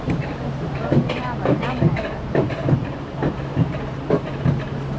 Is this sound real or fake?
fake